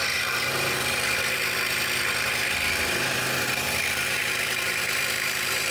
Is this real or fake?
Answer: fake